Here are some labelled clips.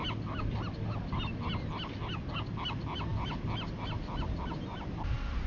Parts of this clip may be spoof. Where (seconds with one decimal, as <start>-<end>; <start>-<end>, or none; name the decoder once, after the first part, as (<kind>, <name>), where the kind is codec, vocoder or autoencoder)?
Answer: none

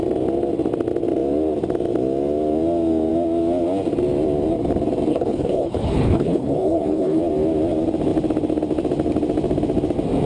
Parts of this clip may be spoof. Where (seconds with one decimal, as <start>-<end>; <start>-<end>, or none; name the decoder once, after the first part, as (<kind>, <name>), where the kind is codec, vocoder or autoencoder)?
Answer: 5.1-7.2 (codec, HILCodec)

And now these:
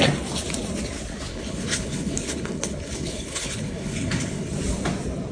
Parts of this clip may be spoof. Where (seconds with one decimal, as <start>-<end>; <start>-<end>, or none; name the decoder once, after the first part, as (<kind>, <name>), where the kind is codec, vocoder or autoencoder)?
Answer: 1.3-4.5 (codec, HILCodec)